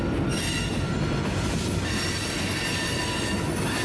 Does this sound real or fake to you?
real